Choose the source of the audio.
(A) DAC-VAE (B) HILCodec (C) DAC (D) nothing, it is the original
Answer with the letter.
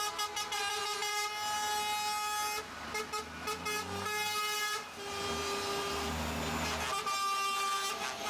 D